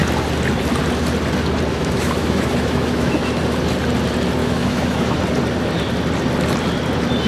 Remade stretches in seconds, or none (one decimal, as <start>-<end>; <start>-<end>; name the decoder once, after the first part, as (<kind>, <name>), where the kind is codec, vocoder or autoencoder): 1.7-3.4 (autoencoder, DAC-VAE); 4.4-5.2